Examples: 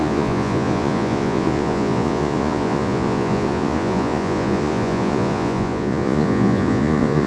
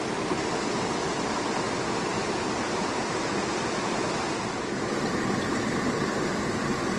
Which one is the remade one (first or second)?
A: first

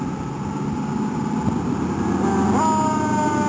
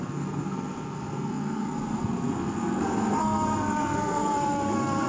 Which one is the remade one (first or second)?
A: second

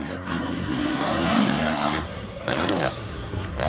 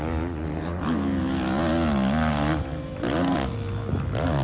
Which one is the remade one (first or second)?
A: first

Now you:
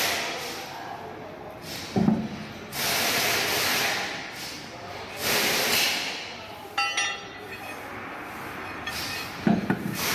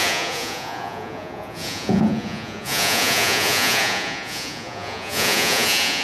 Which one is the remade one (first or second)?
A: second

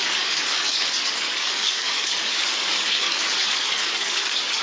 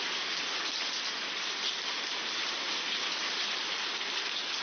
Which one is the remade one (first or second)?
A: first